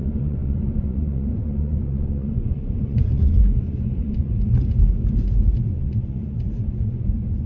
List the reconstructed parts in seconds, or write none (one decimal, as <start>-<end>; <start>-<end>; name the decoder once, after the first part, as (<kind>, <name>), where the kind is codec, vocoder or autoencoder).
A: 0.0-4.3 (vocoder, Vocos); 5.7-7.5